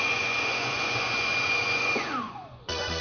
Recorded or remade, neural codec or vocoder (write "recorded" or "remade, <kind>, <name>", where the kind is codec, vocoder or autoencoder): remade, vocoder, Vocos